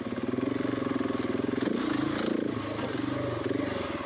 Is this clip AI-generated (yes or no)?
no